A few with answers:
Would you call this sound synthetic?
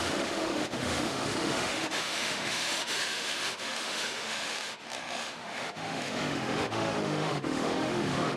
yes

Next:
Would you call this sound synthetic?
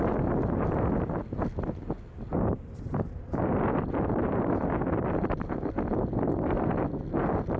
no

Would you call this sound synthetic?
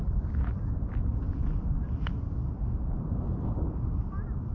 no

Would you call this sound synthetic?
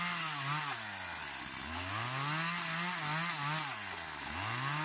no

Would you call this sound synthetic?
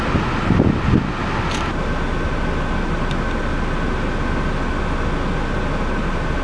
no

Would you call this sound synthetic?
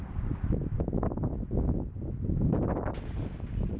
no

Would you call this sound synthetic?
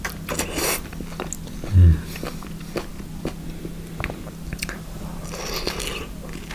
no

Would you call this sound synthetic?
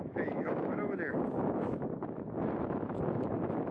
yes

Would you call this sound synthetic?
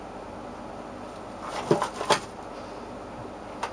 no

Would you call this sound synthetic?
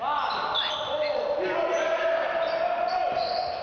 no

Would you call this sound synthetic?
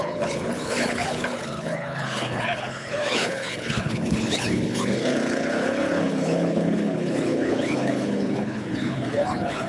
yes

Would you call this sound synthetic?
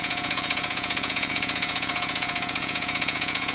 yes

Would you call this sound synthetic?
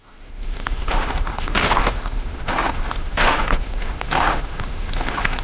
yes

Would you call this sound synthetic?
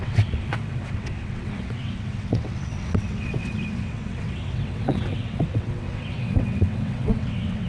yes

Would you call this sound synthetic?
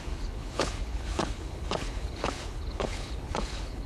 yes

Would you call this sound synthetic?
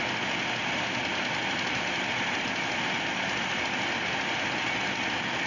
no